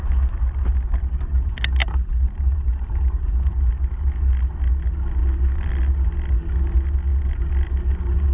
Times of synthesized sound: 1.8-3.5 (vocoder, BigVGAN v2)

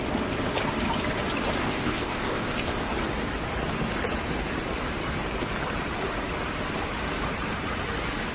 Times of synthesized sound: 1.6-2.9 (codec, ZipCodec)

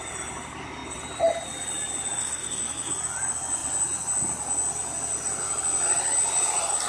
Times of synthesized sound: 2.2-2.9 (codec, SNAC)

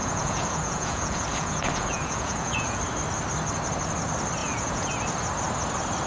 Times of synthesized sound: 0.0-2.8 (vocoder, Vocos); 4.4-4.9